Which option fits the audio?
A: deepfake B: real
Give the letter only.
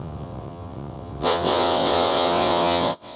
A